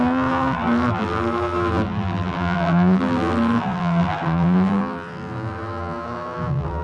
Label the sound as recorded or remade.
remade